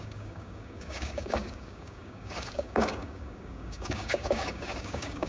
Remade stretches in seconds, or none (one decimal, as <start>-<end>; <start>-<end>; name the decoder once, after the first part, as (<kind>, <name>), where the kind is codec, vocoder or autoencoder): 0.0-5.3 (codec, DAC)